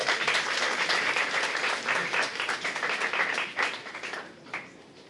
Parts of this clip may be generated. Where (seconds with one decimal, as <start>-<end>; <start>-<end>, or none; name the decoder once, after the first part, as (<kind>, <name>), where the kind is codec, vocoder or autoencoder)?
0.0-5.1 (vocoder, BigVGAN v2)